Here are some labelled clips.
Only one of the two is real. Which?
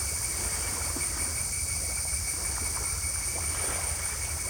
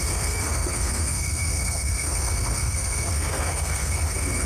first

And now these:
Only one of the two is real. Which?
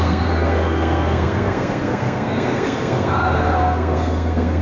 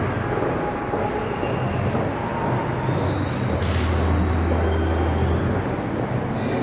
second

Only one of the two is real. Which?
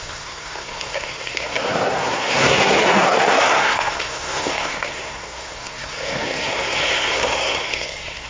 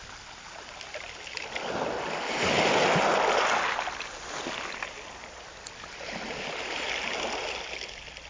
second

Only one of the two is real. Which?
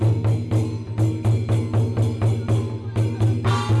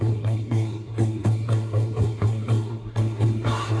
first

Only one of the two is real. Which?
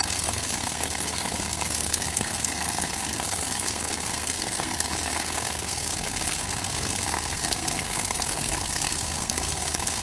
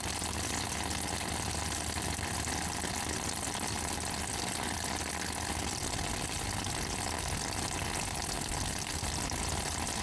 second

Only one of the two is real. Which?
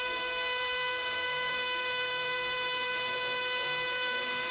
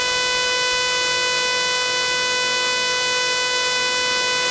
second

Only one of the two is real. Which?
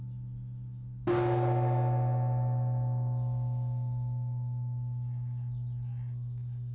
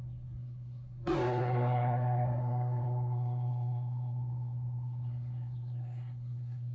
first